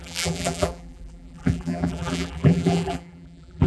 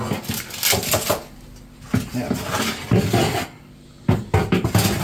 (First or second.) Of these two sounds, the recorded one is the second